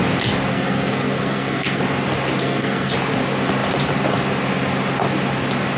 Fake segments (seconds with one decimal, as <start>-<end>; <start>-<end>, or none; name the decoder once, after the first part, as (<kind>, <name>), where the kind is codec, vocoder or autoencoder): 0.5-1.8 (codec, SNAC); 2.4-2.9